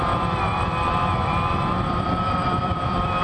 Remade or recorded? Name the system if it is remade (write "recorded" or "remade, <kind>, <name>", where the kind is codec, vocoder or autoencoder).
remade, vocoder, BigVGAN v2